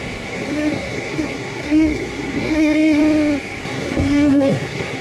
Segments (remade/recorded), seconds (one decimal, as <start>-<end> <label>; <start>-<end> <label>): 0.0-3.0 remade; 3.0-3.6 recorded; 3.6-5.0 remade